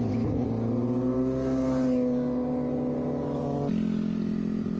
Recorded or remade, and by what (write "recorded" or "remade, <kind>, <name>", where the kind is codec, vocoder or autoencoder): recorded